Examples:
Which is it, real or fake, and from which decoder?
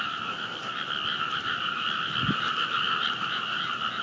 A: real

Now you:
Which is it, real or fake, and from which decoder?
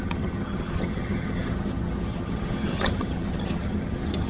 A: fake, vocoder, HiFi-GAN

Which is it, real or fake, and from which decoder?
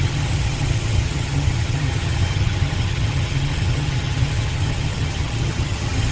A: fake, vocoder, HiFi-GAN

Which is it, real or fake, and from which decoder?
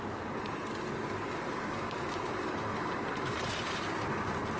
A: real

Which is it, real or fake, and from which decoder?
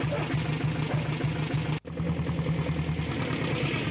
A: real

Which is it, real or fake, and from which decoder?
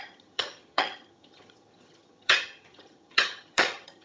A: fake, vocoder, HiFi-GAN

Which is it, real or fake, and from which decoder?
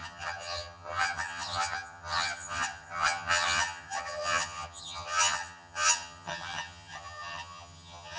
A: fake, vocoder, HiFi-GAN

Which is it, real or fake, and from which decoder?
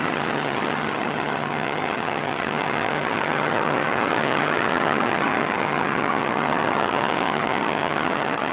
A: fake, vocoder, HiFi-GAN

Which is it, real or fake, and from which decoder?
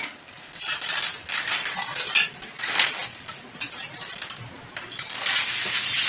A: real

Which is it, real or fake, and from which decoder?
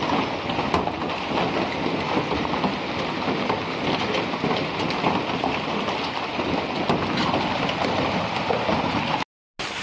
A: real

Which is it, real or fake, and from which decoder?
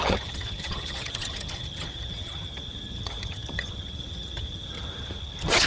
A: fake, vocoder, HiFi-GAN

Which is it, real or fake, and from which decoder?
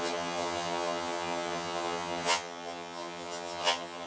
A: fake, vocoder, HiFi-GAN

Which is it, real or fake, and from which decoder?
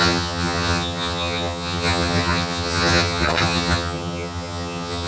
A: fake, vocoder, HiFi-GAN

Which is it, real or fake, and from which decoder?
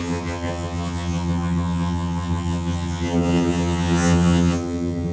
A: fake, vocoder, HiFi-GAN